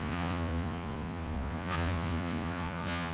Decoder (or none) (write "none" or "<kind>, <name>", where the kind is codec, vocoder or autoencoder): vocoder, Vocos